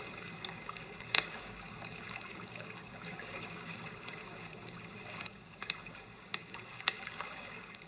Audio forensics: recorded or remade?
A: remade